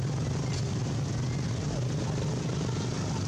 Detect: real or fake real